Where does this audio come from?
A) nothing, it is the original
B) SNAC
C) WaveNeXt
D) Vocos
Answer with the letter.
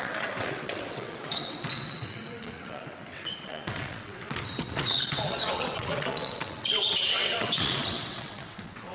C